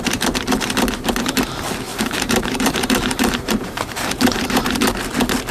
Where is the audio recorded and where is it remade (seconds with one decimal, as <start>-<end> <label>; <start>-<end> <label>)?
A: 0.0-1.9 recorded; 1.9-4.8 remade; 4.8-5.5 recorded